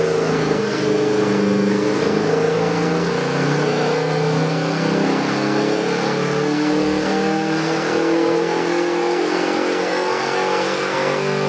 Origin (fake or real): fake